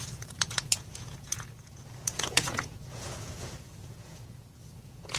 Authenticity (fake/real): fake